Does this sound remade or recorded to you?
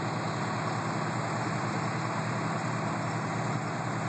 recorded